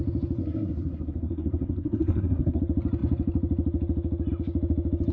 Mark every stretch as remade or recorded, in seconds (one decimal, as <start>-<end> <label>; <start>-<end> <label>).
0.0-0.4 recorded; 0.4-2.6 remade; 2.6-5.1 recorded